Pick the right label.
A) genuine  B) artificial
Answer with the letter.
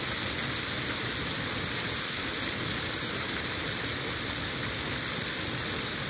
A